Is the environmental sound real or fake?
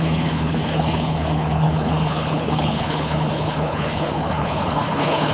fake